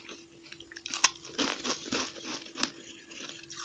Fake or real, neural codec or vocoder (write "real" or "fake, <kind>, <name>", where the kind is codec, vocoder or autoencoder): real